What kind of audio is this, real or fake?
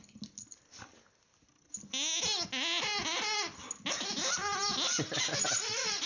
real